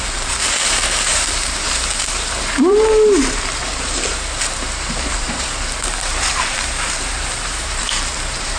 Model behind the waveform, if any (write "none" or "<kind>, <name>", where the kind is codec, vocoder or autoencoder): vocoder, BigVGAN v2